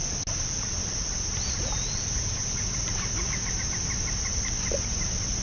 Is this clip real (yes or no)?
yes